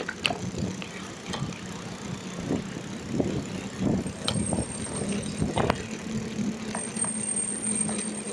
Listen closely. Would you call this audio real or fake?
real